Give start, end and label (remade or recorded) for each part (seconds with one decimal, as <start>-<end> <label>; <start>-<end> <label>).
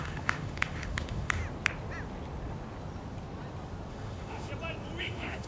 0.0-1.4 remade; 1.4-3.9 recorded; 3.9-4.5 remade; 4.5-5.0 recorded; 5.0-5.5 remade